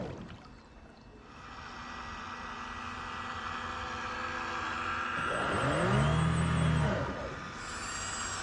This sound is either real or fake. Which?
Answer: real